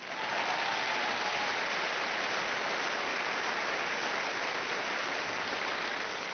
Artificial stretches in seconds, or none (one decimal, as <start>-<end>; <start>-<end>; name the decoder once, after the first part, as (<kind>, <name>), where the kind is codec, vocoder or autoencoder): none